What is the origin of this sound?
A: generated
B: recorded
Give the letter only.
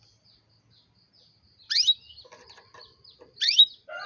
B